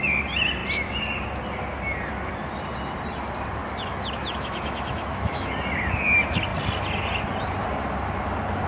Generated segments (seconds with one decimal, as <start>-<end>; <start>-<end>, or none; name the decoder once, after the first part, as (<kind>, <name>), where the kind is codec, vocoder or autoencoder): 3.6-5.5 (autoencoder, DAC-VAE)